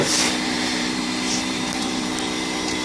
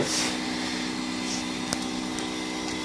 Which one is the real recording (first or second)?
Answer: second